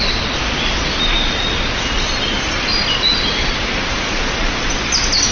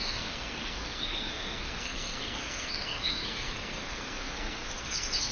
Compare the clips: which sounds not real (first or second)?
second